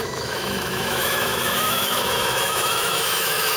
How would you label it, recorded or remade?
remade